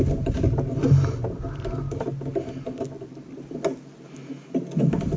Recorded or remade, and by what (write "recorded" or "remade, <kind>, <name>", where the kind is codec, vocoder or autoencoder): recorded